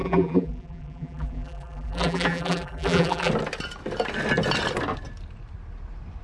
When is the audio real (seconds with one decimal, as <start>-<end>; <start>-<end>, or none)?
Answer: 3.3-6.2